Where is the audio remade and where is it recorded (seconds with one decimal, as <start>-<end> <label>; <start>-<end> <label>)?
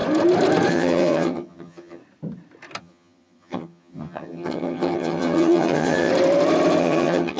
0.0-0.7 recorded; 0.7-2.0 remade; 2.0-2.8 recorded; 2.8-6.1 remade; 6.1-6.8 recorded; 6.8-7.4 remade